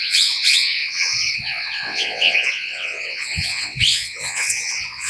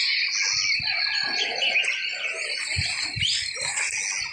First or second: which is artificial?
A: first